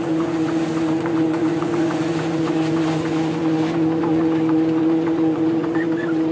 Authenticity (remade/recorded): remade